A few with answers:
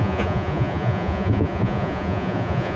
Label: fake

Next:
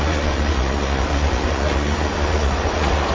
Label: fake